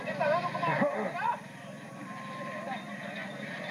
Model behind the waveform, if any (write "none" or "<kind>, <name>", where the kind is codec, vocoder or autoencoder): none